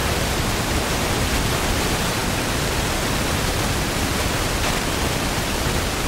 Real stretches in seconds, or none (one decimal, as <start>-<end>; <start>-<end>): 1.4-6.1